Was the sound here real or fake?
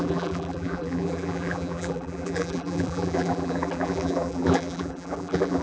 fake